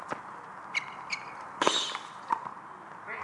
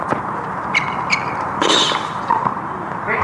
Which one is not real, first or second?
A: second